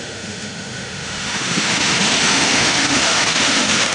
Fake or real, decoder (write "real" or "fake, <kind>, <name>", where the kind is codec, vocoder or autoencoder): fake, autoencoder, DAC-VAE